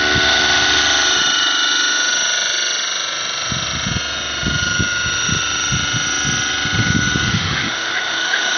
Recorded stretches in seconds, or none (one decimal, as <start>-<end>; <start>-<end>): 0.0-7.3